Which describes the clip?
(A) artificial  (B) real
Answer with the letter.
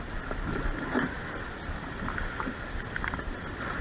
B